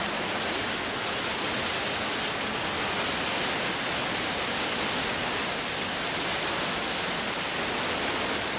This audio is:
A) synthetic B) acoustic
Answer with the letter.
B